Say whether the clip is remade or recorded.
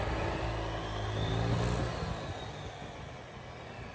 recorded